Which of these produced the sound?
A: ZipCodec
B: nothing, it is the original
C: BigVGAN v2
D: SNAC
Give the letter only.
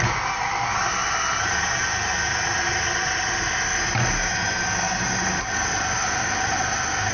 B